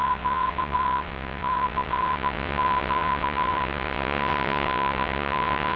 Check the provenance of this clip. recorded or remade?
remade